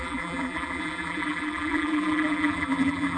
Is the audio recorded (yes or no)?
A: no